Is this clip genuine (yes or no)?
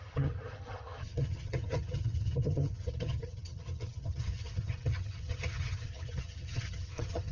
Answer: no